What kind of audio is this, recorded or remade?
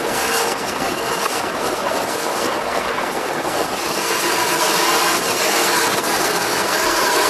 remade